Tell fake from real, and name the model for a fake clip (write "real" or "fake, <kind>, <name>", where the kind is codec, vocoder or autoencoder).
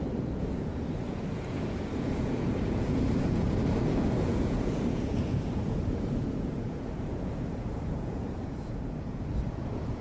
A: fake, vocoder, Vocos